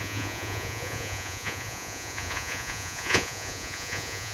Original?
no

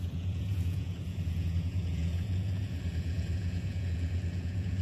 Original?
no